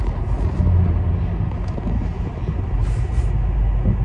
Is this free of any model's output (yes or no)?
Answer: yes